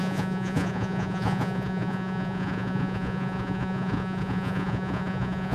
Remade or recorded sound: remade